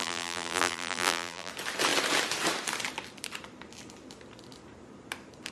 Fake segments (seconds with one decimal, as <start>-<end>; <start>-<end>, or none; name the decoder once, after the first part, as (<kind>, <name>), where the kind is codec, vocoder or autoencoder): 0.0-1.5 (vocoder, BigVGAN v2)